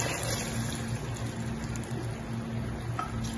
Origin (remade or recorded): recorded